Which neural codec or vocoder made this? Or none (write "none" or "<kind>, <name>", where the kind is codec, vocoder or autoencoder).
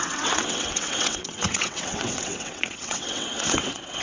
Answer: vocoder, WaveNeXt